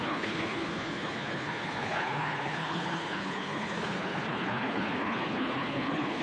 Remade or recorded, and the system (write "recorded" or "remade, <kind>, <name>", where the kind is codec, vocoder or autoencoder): remade, codec, HILCodec